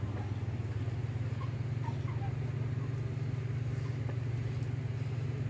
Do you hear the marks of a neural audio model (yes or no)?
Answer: no